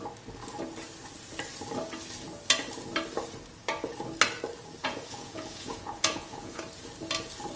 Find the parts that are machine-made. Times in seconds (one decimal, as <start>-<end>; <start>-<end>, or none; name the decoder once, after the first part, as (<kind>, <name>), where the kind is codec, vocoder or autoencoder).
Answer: 4.8-6.6 (vocoder, Vocos)